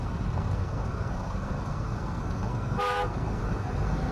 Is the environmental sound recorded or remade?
remade